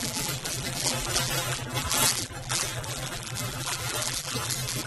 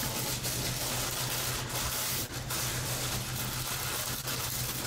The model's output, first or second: first